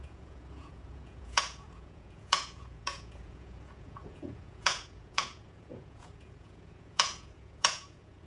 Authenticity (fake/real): fake